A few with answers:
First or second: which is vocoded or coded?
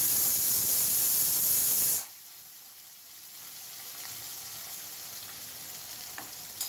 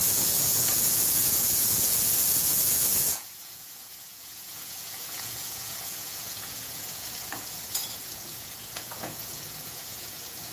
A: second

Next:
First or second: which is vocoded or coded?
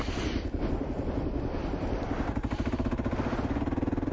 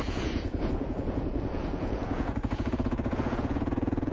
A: second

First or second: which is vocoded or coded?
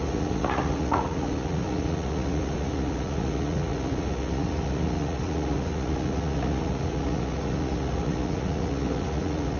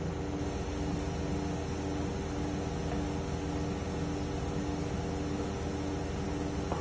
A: first